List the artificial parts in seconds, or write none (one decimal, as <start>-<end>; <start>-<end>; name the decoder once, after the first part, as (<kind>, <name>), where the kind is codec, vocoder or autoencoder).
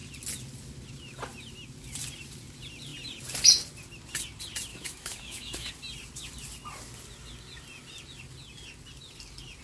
4.7-5.7 (autoencoder, DAC-VAE)